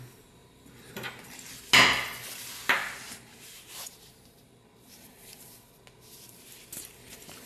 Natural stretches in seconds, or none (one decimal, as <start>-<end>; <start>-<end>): 0.0-0.4; 1.1-2.8; 5.4-7.5